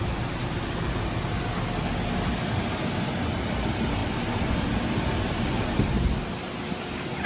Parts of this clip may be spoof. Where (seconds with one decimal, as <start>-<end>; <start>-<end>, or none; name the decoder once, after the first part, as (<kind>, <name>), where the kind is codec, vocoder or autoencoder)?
none